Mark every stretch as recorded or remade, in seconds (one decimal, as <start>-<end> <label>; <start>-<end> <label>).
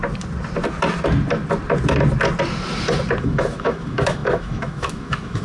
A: 0.0-3.2 recorded; 3.2-5.4 remade